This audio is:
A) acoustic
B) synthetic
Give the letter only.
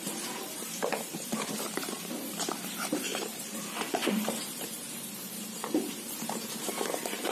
B